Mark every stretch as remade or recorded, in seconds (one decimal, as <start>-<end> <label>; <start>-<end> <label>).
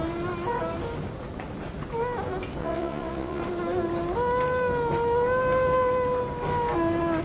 0.0-2.6 recorded; 2.6-3.4 remade; 3.4-7.2 recorded